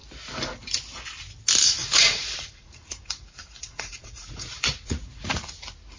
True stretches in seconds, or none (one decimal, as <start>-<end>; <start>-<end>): 0.0-1.8; 5.4-6.0